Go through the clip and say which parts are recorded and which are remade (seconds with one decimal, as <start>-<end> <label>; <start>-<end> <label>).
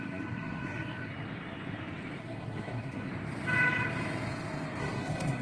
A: 0.0-1.1 remade; 1.1-2.2 recorded; 2.2-3.1 remade; 3.1-4.8 recorded; 4.8-5.4 remade